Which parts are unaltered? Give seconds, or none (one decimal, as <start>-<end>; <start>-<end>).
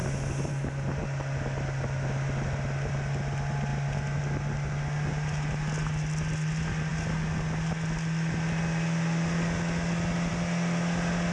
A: 0.0-11.3